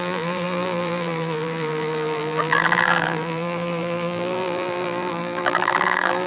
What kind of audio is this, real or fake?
fake